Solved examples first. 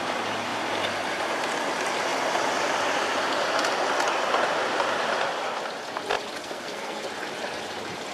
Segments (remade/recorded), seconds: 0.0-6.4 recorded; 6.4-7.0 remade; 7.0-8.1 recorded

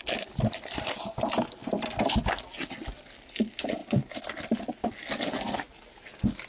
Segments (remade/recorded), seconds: 0.0-6.5 recorded

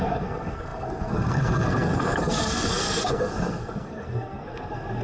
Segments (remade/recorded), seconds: 0.0-5.0 remade

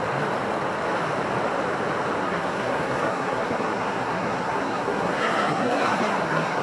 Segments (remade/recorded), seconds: 0.0-2.2 recorded; 2.2-6.6 remade

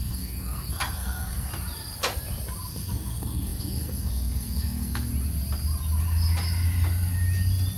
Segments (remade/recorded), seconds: 0.0-1.5 remade; 1.5-2.7 recorded; 2.7-5.1 remade; 5.1-7.8 recorded

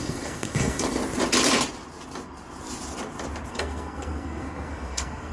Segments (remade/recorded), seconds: 0.0-1.0 remade; 1.0-3.5 recorded; 3.5-5.3 remade